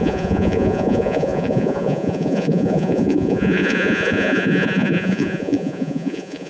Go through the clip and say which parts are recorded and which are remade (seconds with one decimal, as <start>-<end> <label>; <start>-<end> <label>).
0.0-6.5 remade